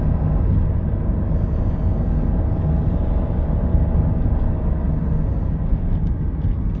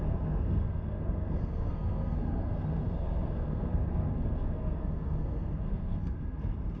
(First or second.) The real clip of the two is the first